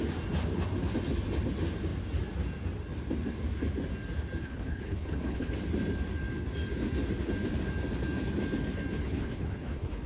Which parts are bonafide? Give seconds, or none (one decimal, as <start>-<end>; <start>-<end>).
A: 0.0-4.4; 5.5-9.0

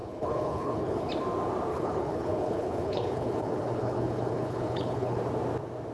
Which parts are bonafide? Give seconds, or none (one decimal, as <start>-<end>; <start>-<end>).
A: 1.1-1.7; 5.2-5.9